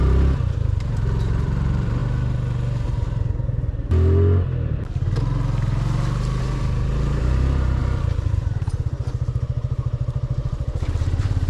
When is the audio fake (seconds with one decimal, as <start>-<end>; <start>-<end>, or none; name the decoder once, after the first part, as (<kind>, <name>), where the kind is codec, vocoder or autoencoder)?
0.0-2.0 (vocoder, BigVGAN v2); 6.4-7.8; 8.3-11.5